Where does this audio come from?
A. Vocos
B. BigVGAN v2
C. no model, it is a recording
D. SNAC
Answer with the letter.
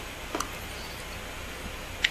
C